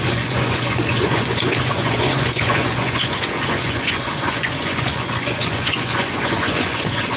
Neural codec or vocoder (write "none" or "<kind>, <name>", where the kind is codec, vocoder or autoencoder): vocoder, Vocos